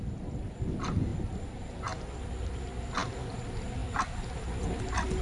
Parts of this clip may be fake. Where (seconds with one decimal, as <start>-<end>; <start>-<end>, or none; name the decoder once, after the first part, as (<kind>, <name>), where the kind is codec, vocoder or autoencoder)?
none